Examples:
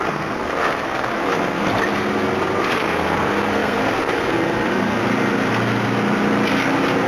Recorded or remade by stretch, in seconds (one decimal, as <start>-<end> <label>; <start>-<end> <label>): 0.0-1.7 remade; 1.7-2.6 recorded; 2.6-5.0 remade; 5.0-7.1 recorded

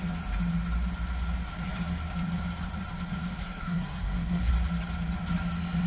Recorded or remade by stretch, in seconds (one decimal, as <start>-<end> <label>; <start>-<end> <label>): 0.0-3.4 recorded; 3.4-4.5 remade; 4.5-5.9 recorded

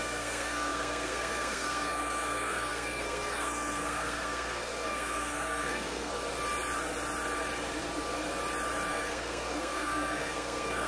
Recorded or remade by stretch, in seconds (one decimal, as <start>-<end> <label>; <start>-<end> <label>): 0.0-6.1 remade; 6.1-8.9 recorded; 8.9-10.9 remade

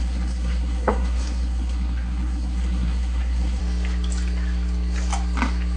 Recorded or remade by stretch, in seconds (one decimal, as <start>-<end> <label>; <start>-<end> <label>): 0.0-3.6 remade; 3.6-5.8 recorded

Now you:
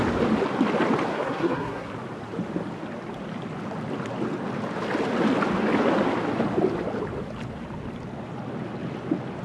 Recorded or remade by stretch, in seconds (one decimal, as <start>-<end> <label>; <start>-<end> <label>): 0.0-1.1 recorded; 1.1-1.9 remade; 1.9-9.4 recorded

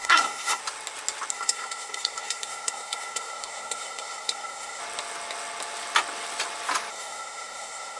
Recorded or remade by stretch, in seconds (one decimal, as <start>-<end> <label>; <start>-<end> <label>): 0.0-0.6 remade; 0.6-1.3 recorded; 1.3-4.8 remade; 4.8-6.9 recorded; 6.9-8.0 remade

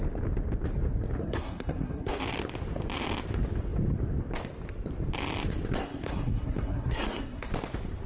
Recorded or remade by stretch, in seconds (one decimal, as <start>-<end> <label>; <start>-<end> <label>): 0.0-1.2 recorded; 1.2-2.2 remade; 2.2-5.8 recorded; 5.8-7.5 remade; 7.5-8.1 recorded